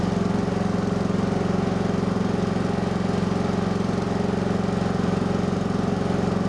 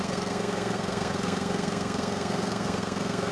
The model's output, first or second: second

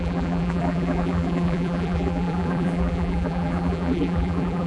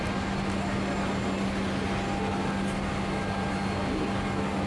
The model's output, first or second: first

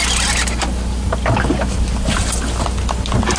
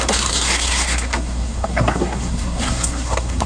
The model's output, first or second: second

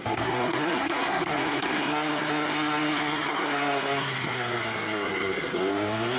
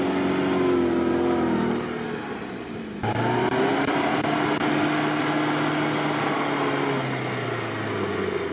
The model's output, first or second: first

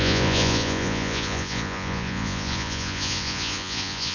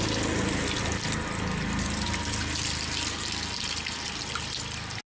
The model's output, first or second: first